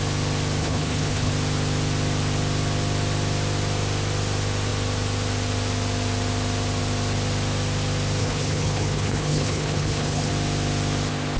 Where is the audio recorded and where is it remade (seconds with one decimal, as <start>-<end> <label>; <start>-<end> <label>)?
0.0-0.6 recorded; 0.6-1.3 remade; 1.3-8.2 recorded; 8.2-10.3 remade; 10.3-11.4 recorded